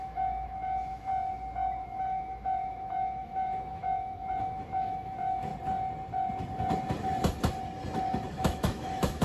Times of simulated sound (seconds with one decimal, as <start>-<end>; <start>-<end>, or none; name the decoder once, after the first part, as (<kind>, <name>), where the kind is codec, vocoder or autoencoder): 0.0-1.1 (autoencoder, DAC-VAE); 1.8-5.5; 8.3-9.2

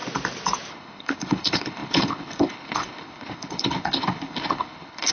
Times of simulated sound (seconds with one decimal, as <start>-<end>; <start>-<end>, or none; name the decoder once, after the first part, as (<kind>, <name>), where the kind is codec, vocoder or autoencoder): 0.7-5.1 (codec, HILCodec)

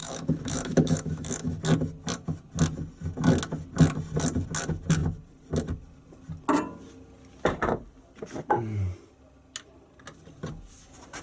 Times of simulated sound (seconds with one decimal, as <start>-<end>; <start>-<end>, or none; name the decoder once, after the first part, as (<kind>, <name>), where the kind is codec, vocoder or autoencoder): 0.0-1.6 (autoencoder, DAC-VAE)

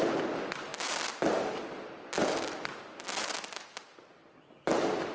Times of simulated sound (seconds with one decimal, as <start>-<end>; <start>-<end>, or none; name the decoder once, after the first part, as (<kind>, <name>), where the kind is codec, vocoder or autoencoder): none

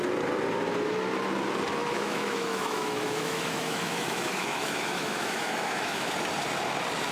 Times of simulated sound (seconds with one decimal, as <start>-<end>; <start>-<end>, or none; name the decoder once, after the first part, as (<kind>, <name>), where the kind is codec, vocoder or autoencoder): 1.8-6.1 (autoencoder, DAC-VAE)